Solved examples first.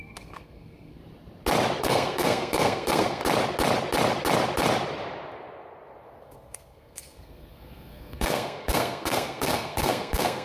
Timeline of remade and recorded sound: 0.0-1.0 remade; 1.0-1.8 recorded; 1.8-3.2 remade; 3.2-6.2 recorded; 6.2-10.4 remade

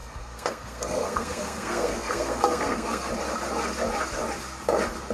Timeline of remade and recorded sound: 0.0-3.1 remade; 3.1-5.1 recorded

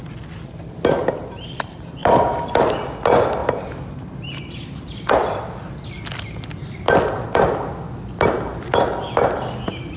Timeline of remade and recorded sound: 0.0-2.0 recorded; 2.0-2.6 remade; 2.6-3.4 recorded; 3.4-5.1 remade; 5.1-10.0 recorded

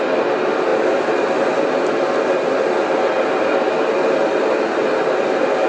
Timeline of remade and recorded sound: 0.0-5.7 recorded